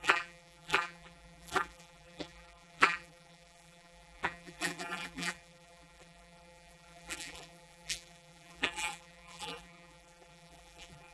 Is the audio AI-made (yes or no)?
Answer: yes